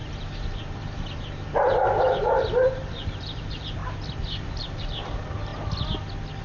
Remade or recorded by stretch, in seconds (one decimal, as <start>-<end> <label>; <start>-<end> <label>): 0.0-3.8 remade; 3.8-4.6 recorded; 4.6-5.5 remade; 5.5-6.4 recorded